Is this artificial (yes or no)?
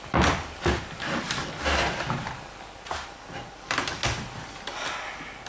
no